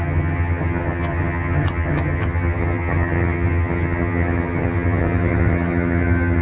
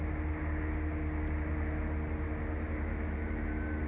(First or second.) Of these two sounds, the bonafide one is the second